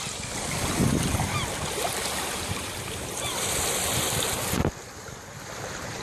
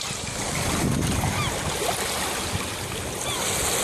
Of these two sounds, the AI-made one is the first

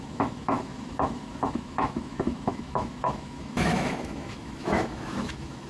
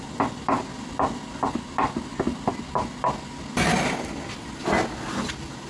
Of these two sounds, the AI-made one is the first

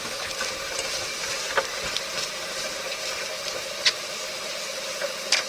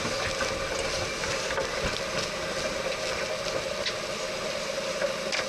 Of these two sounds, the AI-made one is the first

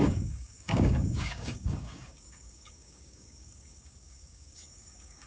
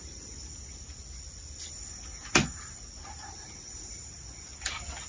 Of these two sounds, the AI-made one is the first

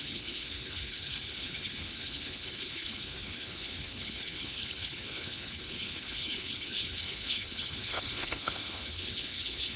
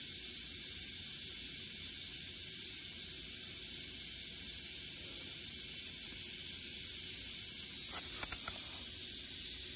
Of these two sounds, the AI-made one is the first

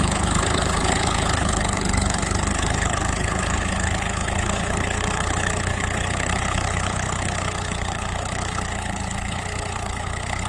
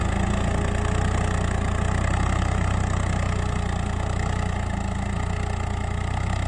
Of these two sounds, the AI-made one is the first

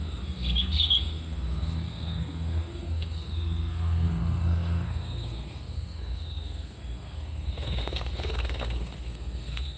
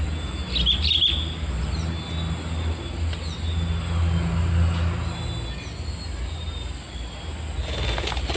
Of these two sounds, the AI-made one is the first